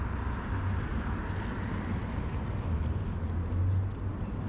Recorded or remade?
recorded